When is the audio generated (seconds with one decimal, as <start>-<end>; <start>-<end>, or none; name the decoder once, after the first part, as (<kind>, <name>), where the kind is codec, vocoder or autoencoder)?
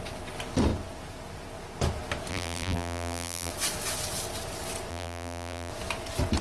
2.3-3.5 (vocoder, BigVGAN v2); 4.9-5.7